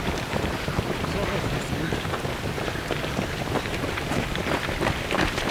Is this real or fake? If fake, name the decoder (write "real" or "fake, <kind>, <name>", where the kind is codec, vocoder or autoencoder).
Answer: fake, vocoder, BigVGAN v2